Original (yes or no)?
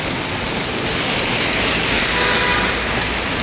yes